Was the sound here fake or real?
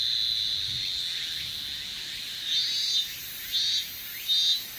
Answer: real